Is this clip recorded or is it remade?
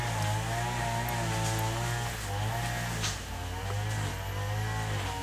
recorded